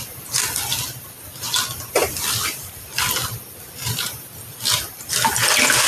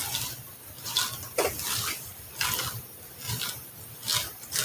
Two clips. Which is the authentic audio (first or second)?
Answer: second